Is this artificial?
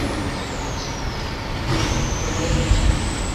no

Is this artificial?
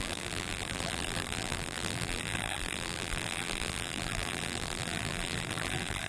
yes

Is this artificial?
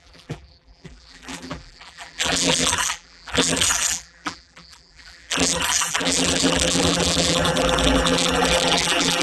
yes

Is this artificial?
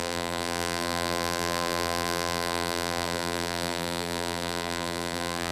yes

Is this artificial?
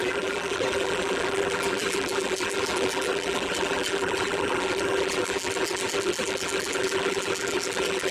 yes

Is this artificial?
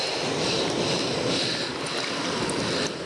no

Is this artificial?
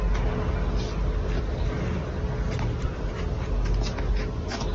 no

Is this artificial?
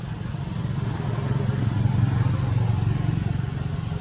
no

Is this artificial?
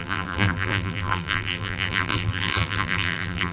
yes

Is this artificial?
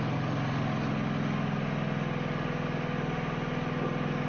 no